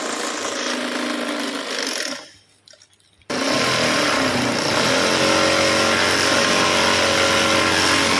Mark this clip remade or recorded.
recorded